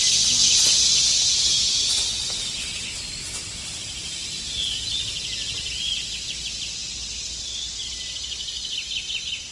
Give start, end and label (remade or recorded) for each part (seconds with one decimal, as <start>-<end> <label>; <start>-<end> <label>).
0.0-9.5 recorded